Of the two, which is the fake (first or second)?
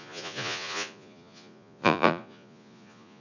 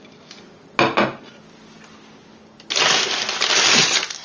first